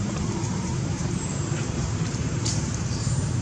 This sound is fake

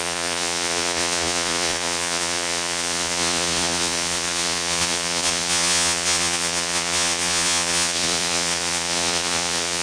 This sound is fake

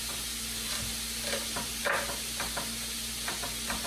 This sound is real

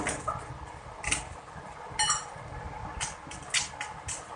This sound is real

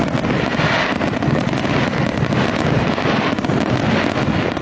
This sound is real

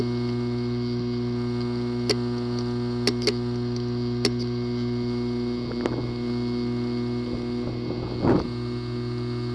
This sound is real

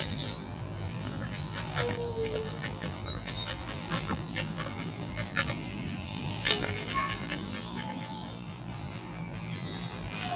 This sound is fake